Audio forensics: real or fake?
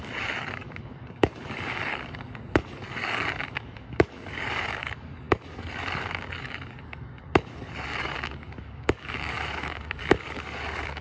fake